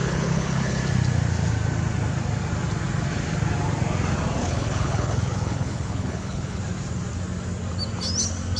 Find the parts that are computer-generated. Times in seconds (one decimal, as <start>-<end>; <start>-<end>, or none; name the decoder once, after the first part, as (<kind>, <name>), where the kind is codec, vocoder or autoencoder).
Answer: 0.0-0.8 (codec, HILCodec); 4.4-6.6